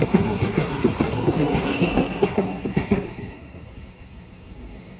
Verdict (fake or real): fake